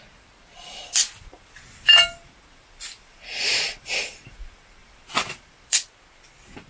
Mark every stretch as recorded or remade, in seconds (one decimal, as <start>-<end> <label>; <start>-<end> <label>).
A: 0.0-6.7 recorded